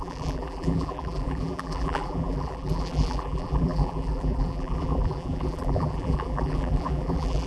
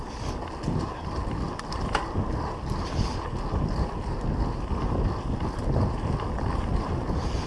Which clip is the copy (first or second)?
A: first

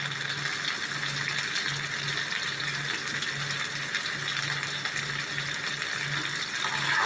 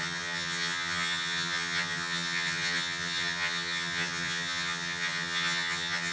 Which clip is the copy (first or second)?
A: second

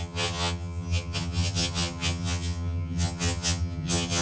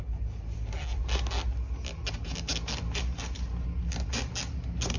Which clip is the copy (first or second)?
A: first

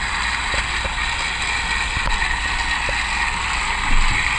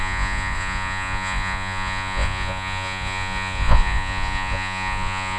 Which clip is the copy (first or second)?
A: second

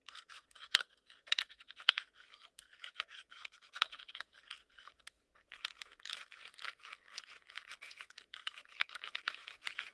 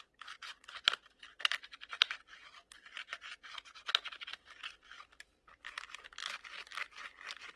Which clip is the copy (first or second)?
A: first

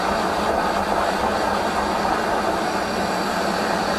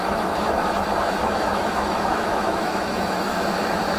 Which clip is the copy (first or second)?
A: second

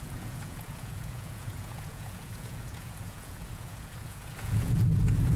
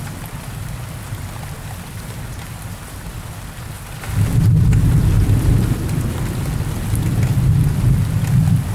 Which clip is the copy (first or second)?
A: first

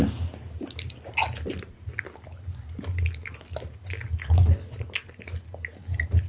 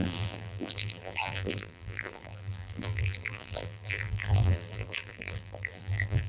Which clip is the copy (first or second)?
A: second